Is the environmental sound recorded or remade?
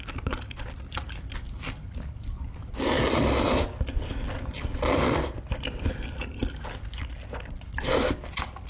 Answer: recorded